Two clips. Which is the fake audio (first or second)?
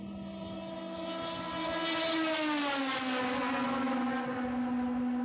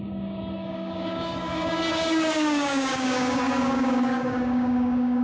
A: second